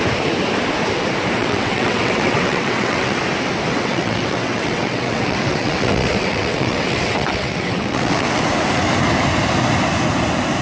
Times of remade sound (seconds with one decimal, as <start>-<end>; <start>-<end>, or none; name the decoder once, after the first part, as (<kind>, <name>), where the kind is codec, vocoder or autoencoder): 1.4-3.2 (vocoder, WaveNeXt); 3.7-8.4